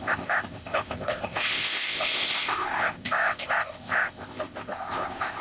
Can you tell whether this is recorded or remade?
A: remade